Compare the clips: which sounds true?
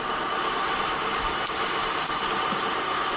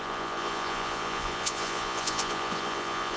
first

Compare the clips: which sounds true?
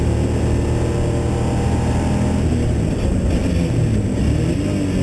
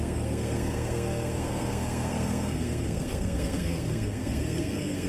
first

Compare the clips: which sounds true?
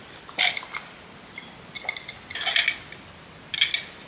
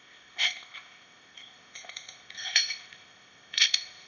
first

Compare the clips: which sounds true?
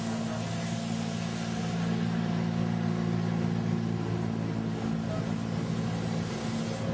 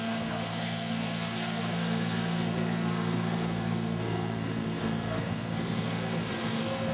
first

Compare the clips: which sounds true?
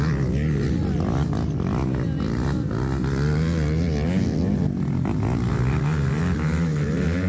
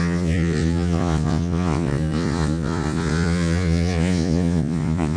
first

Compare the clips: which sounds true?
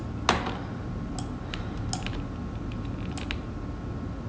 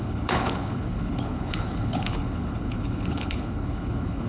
first